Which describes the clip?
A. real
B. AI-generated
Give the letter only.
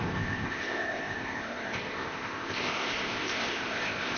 B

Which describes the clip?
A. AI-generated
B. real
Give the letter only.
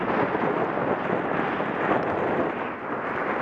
B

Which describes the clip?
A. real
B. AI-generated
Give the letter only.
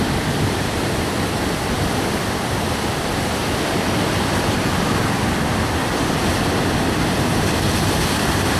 B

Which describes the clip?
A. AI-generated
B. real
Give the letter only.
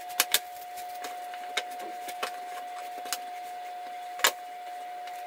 B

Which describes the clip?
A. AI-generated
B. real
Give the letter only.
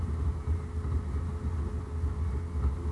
B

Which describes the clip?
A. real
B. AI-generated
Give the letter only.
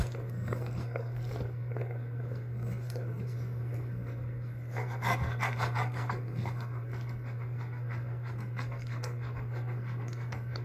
B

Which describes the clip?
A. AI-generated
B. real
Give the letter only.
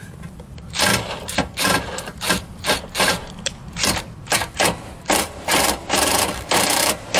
A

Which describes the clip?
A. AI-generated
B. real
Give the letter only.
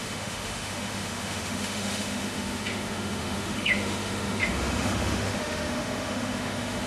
A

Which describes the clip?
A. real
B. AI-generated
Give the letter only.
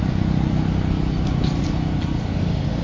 A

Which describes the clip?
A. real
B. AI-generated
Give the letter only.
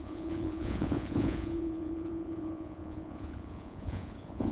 B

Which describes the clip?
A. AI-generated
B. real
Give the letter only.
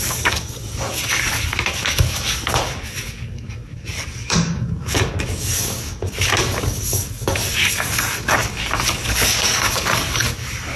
A